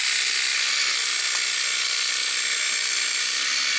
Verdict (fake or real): real